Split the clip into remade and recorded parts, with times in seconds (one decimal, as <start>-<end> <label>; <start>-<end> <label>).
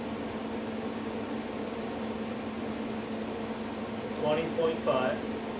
0.0-5.6 recorded